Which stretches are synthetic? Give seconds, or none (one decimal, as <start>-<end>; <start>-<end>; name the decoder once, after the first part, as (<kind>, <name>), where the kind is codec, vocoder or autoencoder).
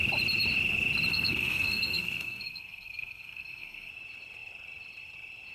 1.1-3.9 (codec, SNAC)